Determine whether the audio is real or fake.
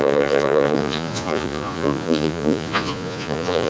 fake